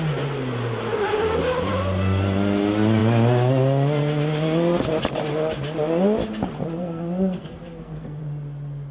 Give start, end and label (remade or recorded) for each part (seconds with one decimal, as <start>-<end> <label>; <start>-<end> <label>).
0.0-6.8 recorded; 6.8-8.2 remade; 8.2-8.9 recorded